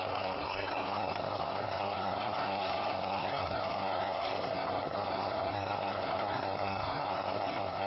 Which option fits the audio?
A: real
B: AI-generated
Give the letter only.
B